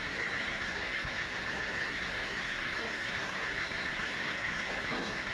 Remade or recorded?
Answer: remade